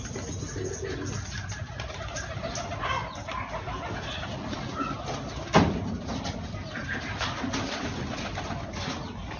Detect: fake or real real